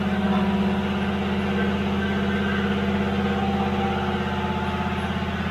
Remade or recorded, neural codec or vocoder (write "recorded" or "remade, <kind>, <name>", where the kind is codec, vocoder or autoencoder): recorded